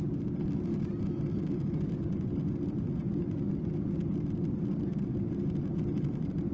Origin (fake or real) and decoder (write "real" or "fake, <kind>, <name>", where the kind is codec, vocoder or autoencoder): real